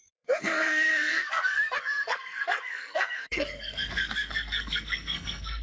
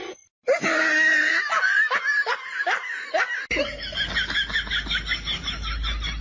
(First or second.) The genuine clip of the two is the second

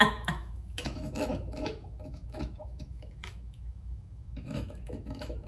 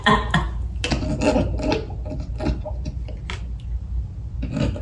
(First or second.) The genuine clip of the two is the second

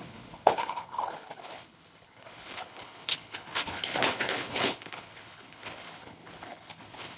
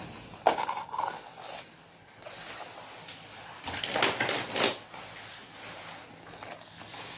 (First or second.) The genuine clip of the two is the second